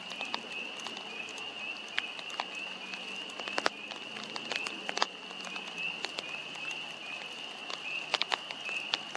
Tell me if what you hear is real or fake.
real